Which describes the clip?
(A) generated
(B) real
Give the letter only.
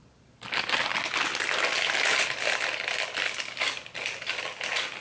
B